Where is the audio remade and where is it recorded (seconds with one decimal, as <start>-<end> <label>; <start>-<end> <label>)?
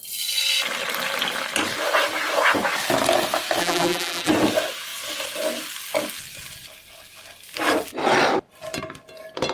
0.0-3.6 recorded; 3.6-4.3 remade; 4.3-9.5 recorded